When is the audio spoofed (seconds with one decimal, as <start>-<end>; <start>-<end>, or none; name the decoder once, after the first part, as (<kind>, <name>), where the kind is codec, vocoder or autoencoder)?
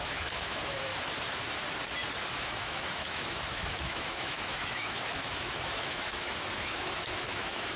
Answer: 0.0-0.9 (autoencoder, DAC-VAE); 2.3-7.8